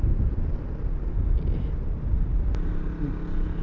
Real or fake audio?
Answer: real